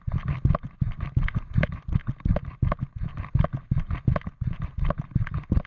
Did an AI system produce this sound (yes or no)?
no